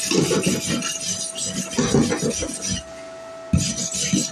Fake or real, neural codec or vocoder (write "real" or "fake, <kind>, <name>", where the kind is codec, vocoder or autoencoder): real